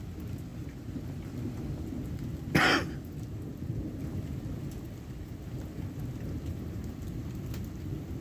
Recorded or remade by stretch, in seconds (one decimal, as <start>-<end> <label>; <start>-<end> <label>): 0.0-8.2 recorded